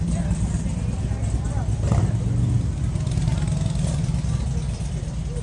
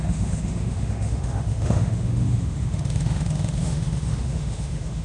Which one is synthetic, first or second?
second